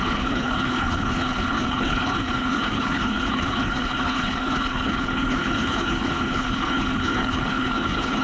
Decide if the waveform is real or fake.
fake